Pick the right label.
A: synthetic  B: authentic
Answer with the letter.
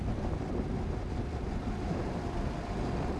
A